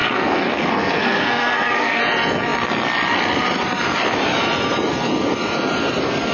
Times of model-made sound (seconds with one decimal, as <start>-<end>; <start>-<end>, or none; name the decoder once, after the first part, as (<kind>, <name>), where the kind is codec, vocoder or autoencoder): 0.0-2.0 (codec, SNAC)